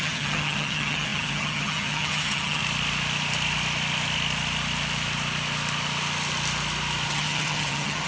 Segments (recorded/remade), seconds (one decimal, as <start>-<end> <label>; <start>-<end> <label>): 0.0-2.6 remade; 2.6-7.1 recorded; 7.1-8.1 remade